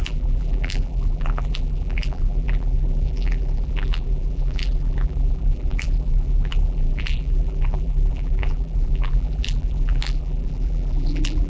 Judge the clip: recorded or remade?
remade